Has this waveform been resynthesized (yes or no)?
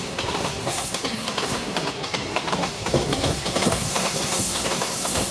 yes